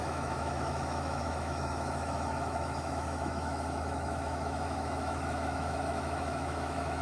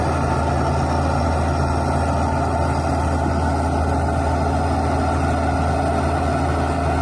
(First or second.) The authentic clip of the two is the second